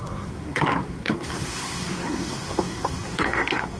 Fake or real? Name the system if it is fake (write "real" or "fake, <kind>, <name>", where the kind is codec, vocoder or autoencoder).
fake, codec, SNAC